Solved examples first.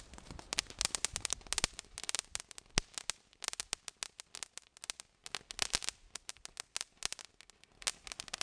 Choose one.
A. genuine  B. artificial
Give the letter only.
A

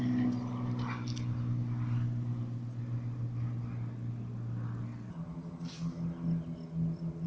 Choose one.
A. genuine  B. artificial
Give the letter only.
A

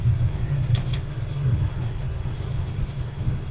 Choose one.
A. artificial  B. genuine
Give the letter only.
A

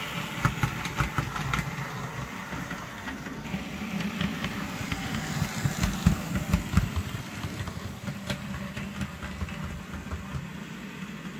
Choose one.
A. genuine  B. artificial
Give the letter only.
A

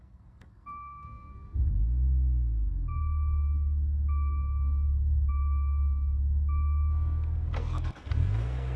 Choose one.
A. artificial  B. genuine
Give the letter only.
A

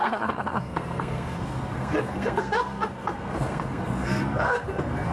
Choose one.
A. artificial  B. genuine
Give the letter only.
A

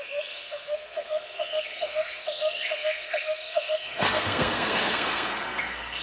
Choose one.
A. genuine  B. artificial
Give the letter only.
B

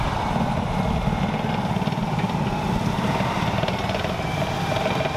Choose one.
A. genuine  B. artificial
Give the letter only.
A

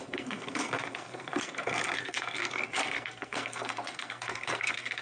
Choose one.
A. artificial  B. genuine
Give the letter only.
A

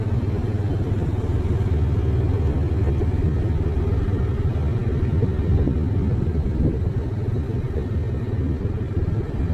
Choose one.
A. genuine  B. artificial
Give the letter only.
A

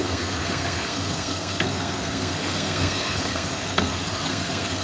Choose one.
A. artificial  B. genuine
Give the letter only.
A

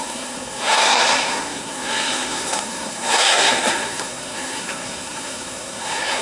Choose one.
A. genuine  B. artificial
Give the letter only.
B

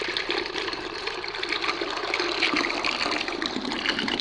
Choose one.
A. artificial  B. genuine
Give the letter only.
B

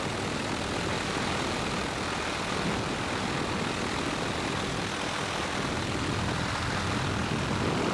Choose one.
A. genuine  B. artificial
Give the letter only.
A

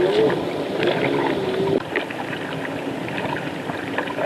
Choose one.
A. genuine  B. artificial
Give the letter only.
A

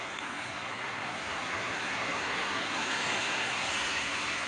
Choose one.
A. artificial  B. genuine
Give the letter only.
A